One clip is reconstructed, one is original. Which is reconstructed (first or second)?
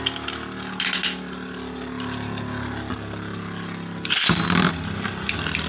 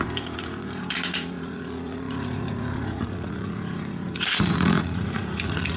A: second